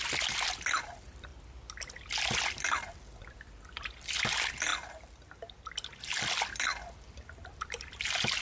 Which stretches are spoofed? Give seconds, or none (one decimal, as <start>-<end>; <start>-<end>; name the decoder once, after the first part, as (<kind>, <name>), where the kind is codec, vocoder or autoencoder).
0.0-1.3 (vocoder, BigVGAN v2); 2.4-4.7; 6.0-8.4